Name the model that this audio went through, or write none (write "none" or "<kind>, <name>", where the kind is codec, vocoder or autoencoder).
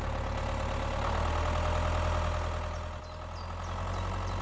none